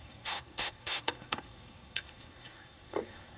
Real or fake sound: fake